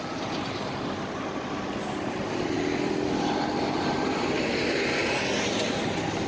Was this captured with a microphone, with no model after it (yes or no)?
yes